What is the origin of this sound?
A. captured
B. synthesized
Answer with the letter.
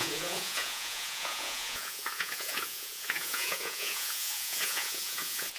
B